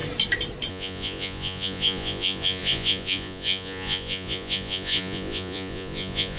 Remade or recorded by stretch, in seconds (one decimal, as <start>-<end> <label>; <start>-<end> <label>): 0.0-0.7 recorded; 0.7-6.4 remade